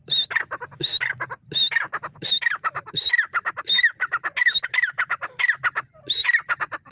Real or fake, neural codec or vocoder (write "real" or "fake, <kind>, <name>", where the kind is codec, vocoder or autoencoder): real